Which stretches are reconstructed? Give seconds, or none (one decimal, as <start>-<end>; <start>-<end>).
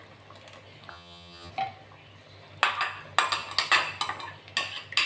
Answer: 0.9-1.5